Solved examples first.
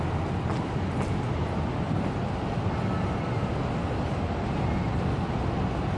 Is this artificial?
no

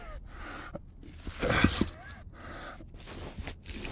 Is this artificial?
no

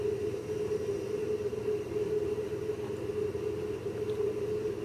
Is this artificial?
no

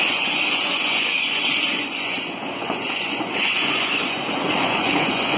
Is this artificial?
yes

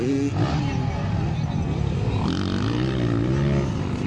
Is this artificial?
no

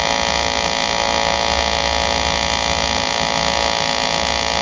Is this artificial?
no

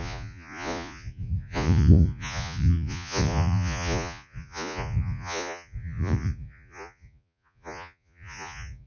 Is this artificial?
yes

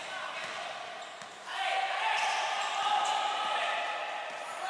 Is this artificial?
no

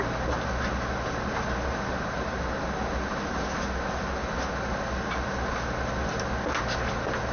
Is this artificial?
no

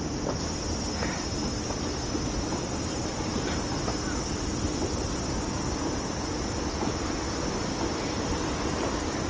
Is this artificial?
no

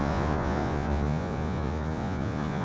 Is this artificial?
yes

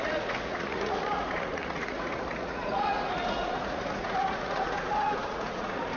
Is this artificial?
yes